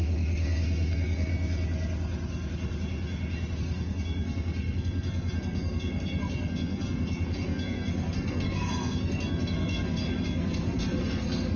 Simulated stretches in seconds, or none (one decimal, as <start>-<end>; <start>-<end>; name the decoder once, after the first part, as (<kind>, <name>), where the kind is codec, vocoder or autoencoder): 0.0-1.3 (codec, SNAC); 3.6-11.6

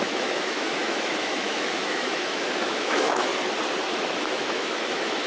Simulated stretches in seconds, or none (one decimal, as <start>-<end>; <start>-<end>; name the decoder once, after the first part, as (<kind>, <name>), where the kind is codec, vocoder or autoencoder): 0.0-3.3 (autoencoder, DAC-VAE); 4.3-5.3

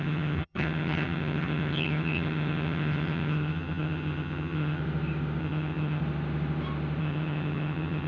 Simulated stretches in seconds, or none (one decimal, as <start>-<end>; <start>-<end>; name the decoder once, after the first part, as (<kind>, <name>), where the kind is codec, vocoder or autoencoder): 0.0-4.8 (vocoder, HiFi-GAN); 5.4-6.0; 7.0-8.1

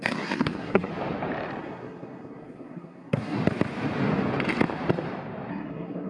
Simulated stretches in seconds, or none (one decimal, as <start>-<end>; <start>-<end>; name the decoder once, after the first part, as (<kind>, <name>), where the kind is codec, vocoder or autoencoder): 0.0-0.9 (codec, SNAC); 1.6-3.4; 5.5-6.1